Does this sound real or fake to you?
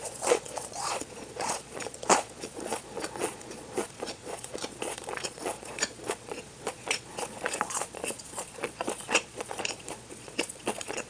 fake